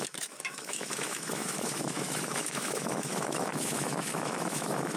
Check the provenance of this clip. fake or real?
fake